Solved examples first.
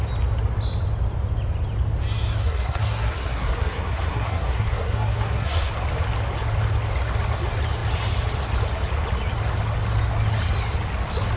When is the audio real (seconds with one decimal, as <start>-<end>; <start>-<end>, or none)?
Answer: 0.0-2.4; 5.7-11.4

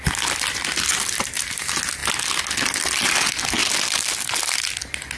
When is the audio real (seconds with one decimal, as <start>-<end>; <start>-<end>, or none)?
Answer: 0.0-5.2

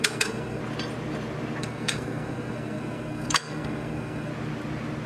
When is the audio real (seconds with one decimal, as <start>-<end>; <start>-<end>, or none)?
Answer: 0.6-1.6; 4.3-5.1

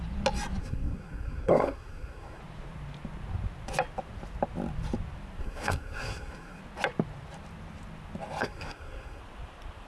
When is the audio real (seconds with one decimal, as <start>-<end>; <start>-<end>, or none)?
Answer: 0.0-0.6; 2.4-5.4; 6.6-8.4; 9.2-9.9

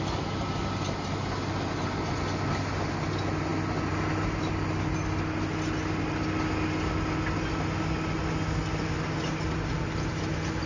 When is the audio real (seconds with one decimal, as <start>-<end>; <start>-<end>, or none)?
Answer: 0.0-10.7

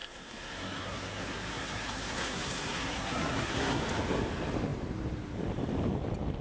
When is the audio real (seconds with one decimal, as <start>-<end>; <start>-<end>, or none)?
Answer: 3.8-6.4